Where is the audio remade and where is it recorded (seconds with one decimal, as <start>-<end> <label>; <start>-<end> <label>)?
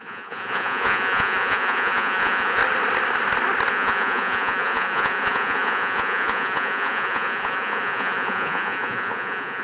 0.0-2.6 remade; 2.6-3.7 recorded; 3.7-9.6 remade